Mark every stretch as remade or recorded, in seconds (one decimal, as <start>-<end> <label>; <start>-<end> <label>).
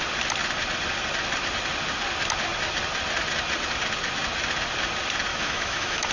0.0-5.3 recorded; 5.3-6.1 remade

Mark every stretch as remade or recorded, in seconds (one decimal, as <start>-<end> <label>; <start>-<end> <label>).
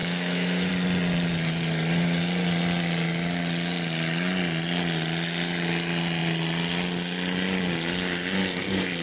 0.0-0.7 remade; 0.7-9.0 recorded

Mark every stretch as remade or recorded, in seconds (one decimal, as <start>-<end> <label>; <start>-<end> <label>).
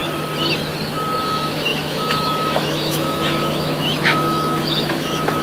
0.0-1.2 recorded; 1.2-5.4 remade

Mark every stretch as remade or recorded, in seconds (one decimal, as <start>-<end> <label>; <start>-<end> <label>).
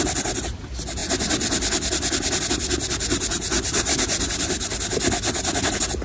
0.0-6.0 recorded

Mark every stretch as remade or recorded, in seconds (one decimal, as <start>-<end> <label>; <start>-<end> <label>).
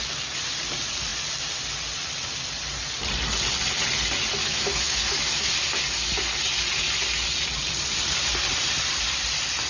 0.0-4.4 recorded; 4.4-5.5 remade; 5.5-9.7 recorded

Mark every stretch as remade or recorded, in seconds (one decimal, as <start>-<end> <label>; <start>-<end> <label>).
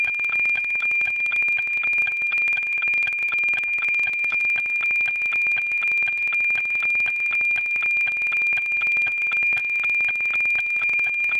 0.0-1.4 remade; 1.4-2.0 recorded; 2.0-4.4 remade; 4.4-8.6 recorded; 8.6-9.6 remade; 9.6-10.8 recorded; 10.8-11.4 remade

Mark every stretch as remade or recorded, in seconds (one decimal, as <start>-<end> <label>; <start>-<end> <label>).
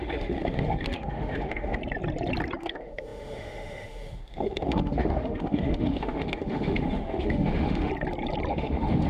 0.0-1.8 remade; 1.8-2.6 recorded; 2.6-7.9 remade; 7.9-8.5 recorded; 8.5-9.1 remade